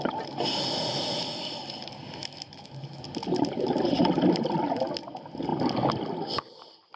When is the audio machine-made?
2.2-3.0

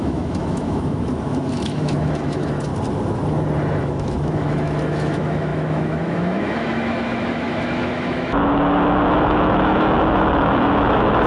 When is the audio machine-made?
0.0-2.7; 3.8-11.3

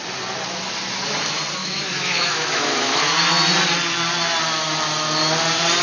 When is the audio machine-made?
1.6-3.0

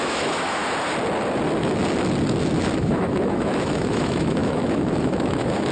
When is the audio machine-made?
0.0-0.6; 2.8-5.7